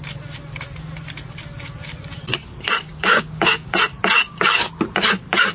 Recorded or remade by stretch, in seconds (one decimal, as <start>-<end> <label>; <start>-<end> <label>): 0.0-2.9 recorded; 2.9-3.8 remade; 3.8-5.5 recorded